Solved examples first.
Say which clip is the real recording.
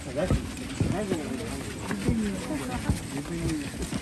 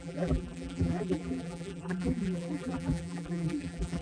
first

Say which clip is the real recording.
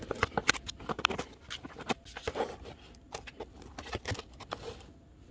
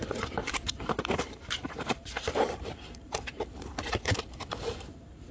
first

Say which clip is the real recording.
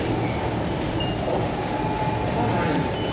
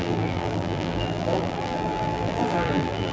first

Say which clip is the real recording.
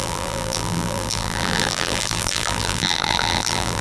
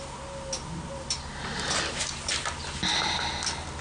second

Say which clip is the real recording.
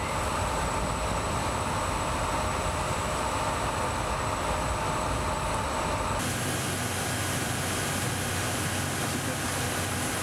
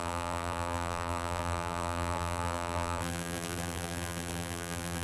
first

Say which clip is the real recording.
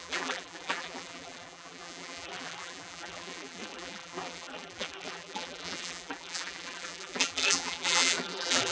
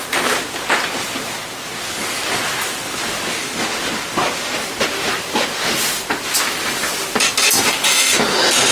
second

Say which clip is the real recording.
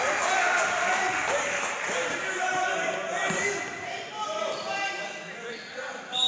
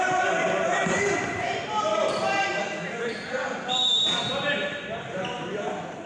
first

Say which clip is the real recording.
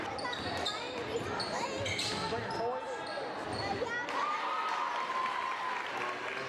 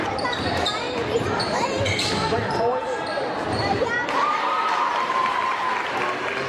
first